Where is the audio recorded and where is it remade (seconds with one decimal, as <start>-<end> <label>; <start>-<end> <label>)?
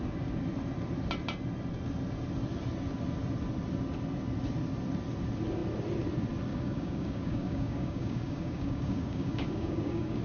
0.0-6.5 recorded; 6.5-10.2 remade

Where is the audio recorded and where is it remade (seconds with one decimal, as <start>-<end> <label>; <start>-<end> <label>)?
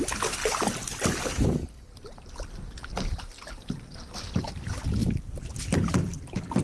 0.0-6.6 remade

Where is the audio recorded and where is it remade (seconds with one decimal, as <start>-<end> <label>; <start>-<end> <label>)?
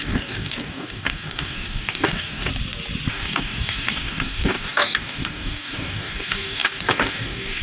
0.0-2.5 remade; 2.5-3.1 recorded; 3.1-7.6 remade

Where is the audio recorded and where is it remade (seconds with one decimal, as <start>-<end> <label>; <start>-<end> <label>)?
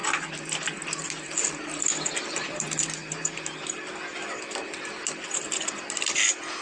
0.0-6.6 recorded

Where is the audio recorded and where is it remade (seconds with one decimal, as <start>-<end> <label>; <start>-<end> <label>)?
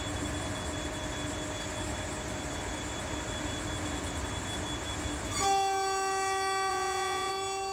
0.0-6.7 recorded; 6.7-7.3 remade; 7.3-7.7 recorded